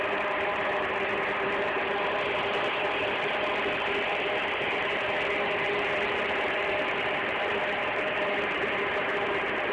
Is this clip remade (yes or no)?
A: no